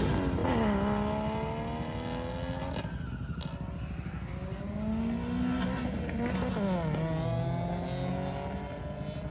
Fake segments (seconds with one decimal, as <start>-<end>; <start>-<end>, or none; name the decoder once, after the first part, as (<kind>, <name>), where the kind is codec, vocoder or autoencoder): none